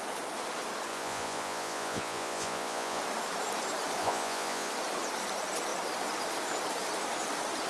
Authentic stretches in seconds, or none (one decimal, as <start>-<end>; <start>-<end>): 0.0-0.9; 3.0-4.0; 4.7-7.7